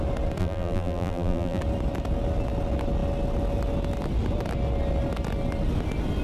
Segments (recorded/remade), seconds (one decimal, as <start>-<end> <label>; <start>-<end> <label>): 0.0-0.4 recorded; 0.4-1.6 remade; 1.6-6.2 recorded